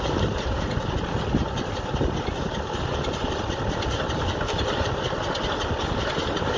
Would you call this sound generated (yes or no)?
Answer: no